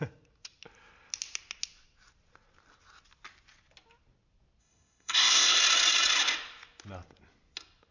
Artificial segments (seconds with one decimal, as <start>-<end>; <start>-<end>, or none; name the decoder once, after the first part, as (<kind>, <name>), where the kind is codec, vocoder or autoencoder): 4.6-5.6 (codec, ZipCodec)